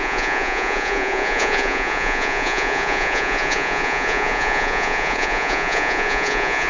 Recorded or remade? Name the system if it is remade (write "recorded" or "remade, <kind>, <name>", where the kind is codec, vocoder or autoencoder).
remade, vocoder, Vocos